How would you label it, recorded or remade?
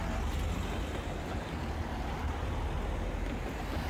recorded